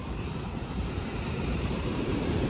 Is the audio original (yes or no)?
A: no